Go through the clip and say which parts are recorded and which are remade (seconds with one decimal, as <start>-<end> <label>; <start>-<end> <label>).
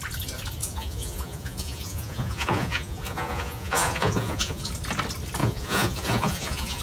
0.0-0.6 recorded; 0.6-4.7 remade; 4.7-5.4 recorded; 5.4-6.8 remade